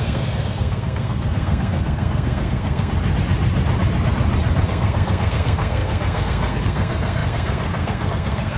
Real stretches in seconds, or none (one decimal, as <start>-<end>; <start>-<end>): 2.9-4.7